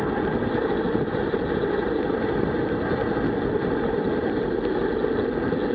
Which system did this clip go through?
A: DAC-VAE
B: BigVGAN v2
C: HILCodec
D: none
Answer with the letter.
D